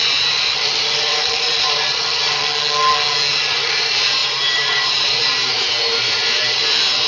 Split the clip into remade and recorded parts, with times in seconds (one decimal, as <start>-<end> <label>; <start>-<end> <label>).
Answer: 0.0-2.4 remade; 2.4-3.3 recorded; 3.3-7.1 remade